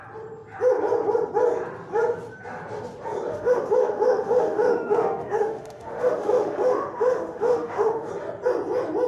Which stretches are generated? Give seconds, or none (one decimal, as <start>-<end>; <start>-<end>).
3.3-8.1